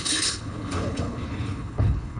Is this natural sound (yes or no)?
no